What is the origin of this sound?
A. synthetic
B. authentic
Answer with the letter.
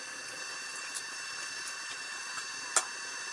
B